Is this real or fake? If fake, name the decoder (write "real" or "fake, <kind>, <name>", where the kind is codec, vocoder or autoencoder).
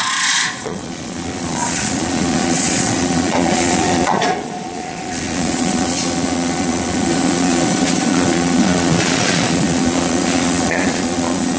fake, vocoder, Vocos